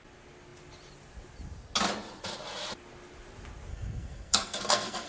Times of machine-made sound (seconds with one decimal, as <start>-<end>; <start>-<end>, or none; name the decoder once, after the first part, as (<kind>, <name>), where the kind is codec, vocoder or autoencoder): 3.7-5.1 (codec, SNAC)